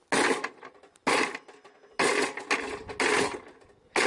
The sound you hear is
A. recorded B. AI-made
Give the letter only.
A